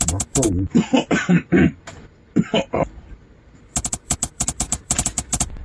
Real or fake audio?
fake